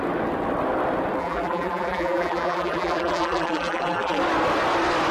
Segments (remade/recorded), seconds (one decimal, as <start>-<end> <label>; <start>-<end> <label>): 0.0-1.2 recorded; 1.2-4.2 remade; 4.2-5.1 recorded